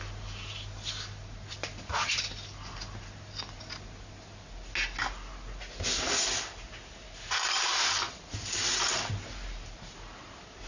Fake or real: real